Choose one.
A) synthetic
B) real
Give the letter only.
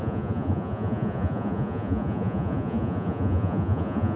A